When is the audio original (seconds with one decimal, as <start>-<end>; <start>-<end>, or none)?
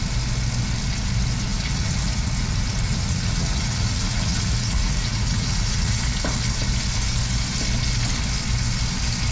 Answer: 0.0-1.5; 6.0-9.3